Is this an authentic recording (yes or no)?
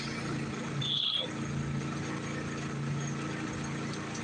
yes